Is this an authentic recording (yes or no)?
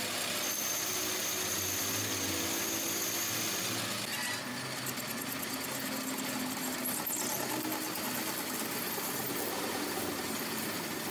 yes